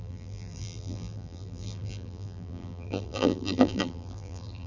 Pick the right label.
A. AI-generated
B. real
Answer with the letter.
A